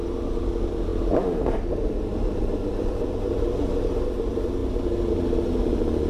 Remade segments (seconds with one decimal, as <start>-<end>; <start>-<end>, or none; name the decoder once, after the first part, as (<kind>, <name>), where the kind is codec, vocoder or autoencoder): none